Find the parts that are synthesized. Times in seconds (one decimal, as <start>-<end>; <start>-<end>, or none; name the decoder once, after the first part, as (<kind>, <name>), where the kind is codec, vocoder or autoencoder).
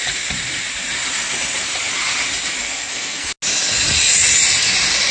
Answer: 2.6-3.3 (codec, SNAC)